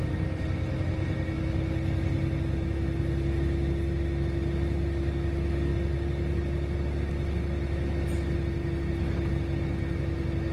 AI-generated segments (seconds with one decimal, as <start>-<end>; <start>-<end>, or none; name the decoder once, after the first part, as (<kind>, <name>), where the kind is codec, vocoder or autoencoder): none